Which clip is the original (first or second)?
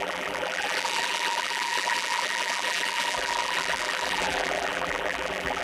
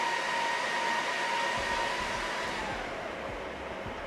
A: second